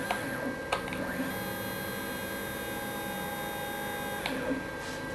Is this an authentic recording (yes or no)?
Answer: yes